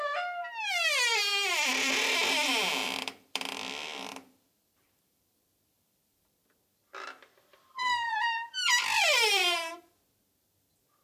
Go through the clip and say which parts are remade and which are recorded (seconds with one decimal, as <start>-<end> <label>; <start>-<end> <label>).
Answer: 0.0-1.1 recorded; 1.1-6.3 remade; 6.3-7.5 recorded; 7.5-9.7 remade; 9.7-11.0 recorded